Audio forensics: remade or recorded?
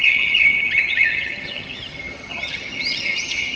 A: remade